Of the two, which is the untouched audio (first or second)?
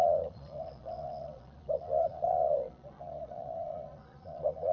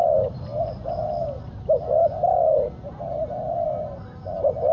second